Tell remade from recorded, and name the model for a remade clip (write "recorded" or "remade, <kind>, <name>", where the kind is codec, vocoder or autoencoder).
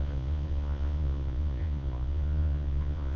remade, vocoder, Vocos